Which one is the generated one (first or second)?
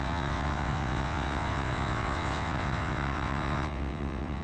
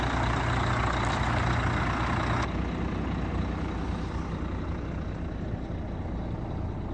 first